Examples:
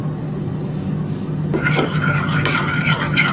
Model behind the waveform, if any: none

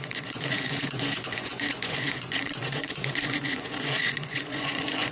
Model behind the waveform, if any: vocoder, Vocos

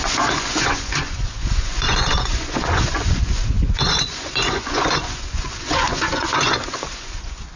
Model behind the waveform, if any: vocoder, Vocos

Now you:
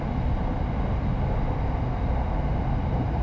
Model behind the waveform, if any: none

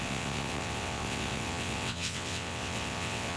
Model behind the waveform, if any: vocoder, WaveNeXt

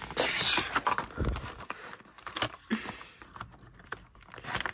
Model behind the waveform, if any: none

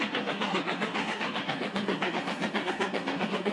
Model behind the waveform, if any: codec, SNAC